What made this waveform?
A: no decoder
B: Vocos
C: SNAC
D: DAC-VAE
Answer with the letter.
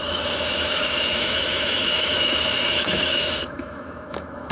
D